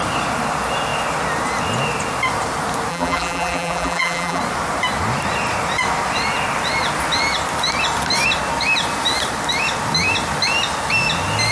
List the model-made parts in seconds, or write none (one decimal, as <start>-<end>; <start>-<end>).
2.9-4.4